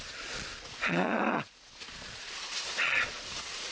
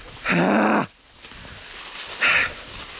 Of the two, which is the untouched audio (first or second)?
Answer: second